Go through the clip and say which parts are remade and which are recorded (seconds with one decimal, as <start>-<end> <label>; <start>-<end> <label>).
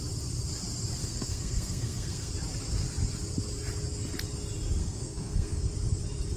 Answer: 0.0-1.0 recorded; 1.0-2.3 remade; 2.3-4.8 recorded; 4.8-5.6 remade; 5.6-6.4 recorded